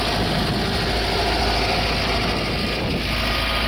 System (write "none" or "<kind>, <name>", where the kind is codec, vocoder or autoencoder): none